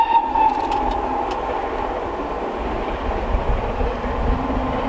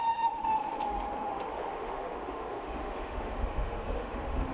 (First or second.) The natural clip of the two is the first